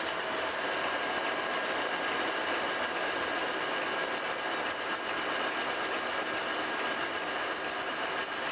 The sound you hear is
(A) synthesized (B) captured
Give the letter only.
B